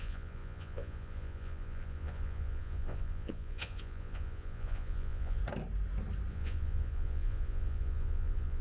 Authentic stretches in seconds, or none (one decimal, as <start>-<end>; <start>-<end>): 5.4-6.3